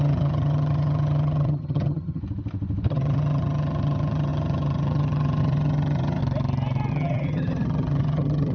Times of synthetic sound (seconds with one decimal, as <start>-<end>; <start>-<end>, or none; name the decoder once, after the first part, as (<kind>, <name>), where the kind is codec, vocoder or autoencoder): 0.0-2.2 (vocoder, HiFi-GAN); 2.9-6.2; 6.9-8.5